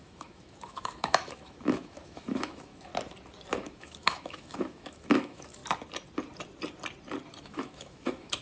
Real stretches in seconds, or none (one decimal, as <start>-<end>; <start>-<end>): 2.9-3.5; 5.6-7.4